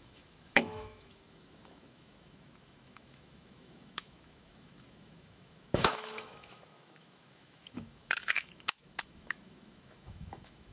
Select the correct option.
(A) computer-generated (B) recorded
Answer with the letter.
A